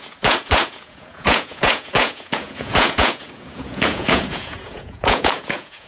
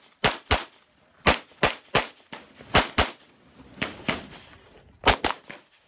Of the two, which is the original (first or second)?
second